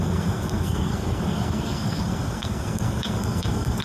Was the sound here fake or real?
fake